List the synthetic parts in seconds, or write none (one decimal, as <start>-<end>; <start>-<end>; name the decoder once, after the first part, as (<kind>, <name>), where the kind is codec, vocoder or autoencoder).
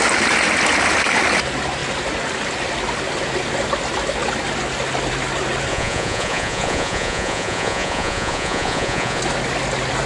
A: 5.7-9.2 (vocoder, Vocos)